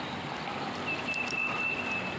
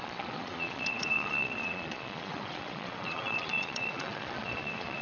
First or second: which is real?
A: first